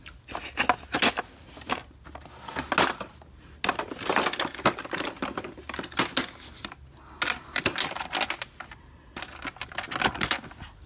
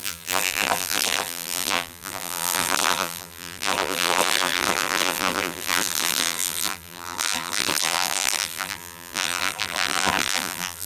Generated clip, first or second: second